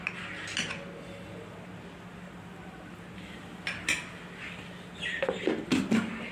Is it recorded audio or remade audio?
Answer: recorded